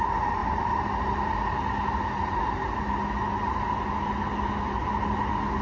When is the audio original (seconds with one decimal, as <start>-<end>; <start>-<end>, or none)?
0.0-5.6

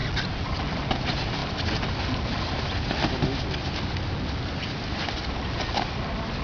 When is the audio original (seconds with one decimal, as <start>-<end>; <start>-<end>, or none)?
0.9-6.4

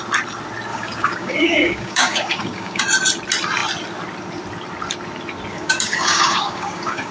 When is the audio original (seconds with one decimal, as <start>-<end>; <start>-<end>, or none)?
0.0-0.7; 2.8-5.5